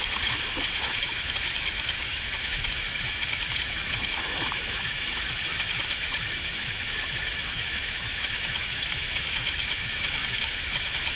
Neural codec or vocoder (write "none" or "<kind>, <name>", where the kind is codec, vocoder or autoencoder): autoencoder, DAC-VAE